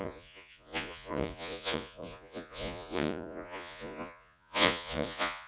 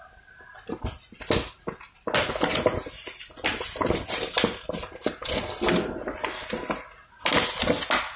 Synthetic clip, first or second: first